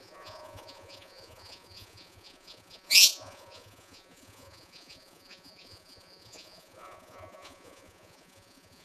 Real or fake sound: fake